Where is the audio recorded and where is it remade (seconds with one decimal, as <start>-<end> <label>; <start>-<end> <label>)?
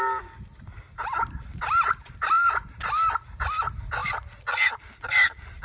0.0-5.6 recorded